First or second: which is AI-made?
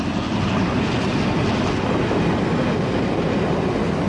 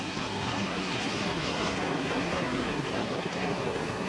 second